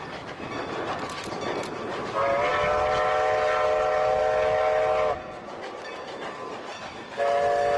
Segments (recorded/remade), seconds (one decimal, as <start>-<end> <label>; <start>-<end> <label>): 0.0-7.8 recorded